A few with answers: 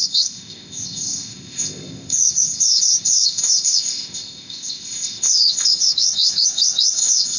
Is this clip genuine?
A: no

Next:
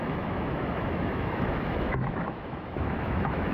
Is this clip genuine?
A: no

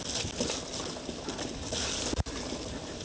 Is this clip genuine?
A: yes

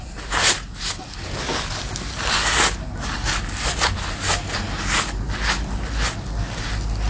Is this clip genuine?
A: yes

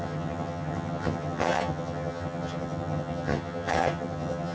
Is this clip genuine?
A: no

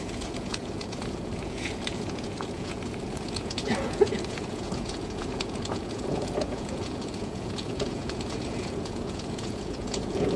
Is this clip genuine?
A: no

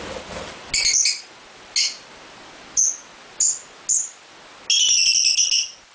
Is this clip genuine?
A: yes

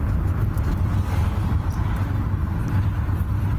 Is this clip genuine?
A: yes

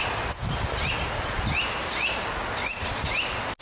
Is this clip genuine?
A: yes